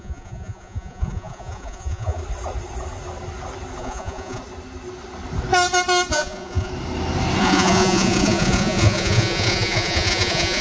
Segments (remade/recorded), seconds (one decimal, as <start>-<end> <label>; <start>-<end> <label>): 0.0-2.2 remade; 2.2-3.8 recorded; 3.8-4.4 remade; 4.4-6.1 recorded; 6.1-6.7 remade; 6.7-7.4 recorded; 7.4-10.6 remade